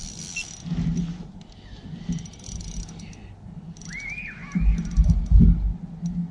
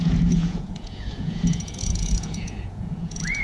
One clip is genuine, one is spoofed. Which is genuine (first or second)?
first